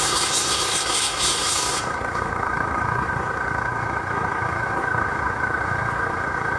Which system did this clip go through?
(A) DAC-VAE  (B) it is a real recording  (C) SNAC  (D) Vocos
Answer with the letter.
C